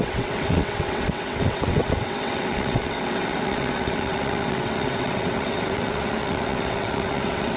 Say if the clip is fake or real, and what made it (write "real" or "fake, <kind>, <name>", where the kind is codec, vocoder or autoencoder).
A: fake, vocoder, WaveNeXt